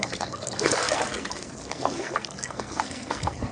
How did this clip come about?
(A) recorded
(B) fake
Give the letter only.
B